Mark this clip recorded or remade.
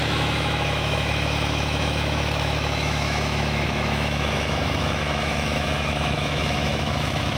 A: remade